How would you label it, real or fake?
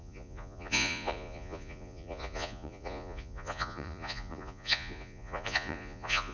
fake